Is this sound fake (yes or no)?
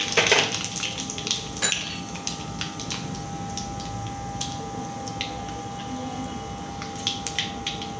no